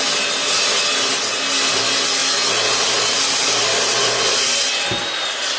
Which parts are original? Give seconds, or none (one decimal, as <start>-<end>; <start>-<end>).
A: 0.0-5.6